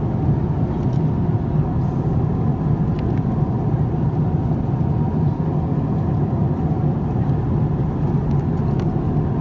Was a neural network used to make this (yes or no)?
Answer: no